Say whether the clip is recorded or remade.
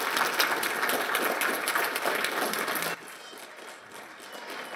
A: recorded